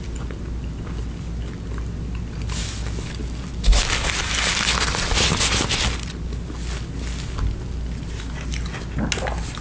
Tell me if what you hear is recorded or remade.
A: recorded